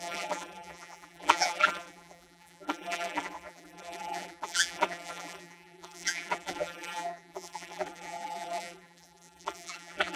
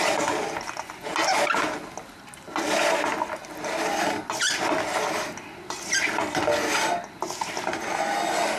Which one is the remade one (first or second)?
first